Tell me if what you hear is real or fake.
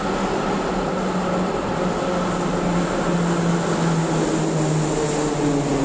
real